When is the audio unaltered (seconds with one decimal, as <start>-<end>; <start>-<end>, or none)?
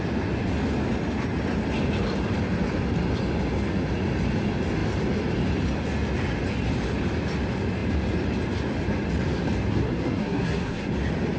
0.0-9.7; 10.9-11.4